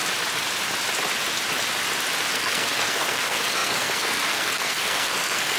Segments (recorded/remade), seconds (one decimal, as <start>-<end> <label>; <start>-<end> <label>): 0.0-2.3 recorded; 2.3-5.6 remade